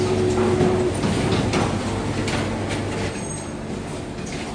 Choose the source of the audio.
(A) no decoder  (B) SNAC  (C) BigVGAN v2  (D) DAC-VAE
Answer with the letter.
A